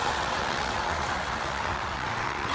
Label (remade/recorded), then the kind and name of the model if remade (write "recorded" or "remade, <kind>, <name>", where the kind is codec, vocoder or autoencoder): remade, vocoder, WaveNeXt